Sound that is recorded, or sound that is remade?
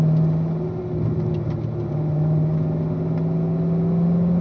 recorded